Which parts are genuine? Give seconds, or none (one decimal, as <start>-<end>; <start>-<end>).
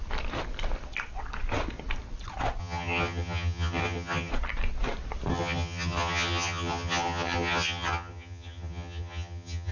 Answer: 0.0-2.6; 4.3-5.3